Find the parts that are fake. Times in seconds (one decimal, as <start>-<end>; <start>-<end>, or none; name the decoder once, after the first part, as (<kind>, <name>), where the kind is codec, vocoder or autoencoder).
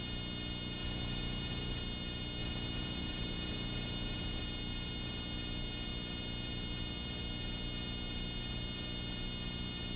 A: 0.8-1.8 (vocoder, Vocos); 2.4-4.4